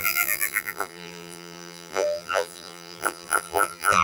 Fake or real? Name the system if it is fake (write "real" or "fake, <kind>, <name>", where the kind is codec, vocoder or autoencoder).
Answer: fake, vocoder, BigVGAN v2